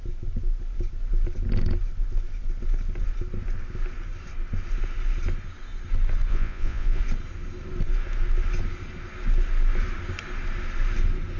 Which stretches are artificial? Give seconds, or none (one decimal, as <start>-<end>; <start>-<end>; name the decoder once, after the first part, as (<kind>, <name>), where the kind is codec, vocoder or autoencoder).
6.3-7.0 (vocoder, Vocos)